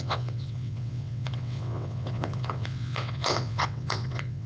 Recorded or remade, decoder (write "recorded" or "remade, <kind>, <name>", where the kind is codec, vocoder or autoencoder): remade, vocoder, WaveNeXt